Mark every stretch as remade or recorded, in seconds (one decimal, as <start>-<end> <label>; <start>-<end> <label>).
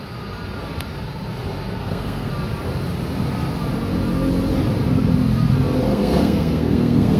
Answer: 0.0-1.8 recorded; 1.8-2.3 remade; 2.3-5.9 recorded; 5.9-7.2 remade